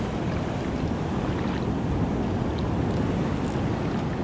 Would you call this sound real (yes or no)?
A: yes